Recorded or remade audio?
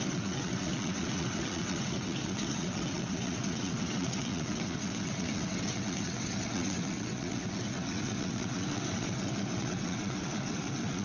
remade